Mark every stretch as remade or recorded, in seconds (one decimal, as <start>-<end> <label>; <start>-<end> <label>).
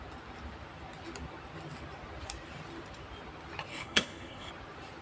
0.0-3.7 recorded; 3.7-4.5 remade; 4.5-5.0 recorded